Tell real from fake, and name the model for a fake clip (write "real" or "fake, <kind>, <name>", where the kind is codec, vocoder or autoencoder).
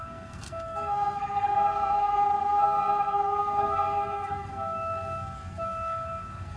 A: fake, codec, SNAC